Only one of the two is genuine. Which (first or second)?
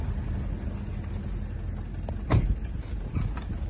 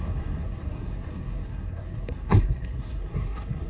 first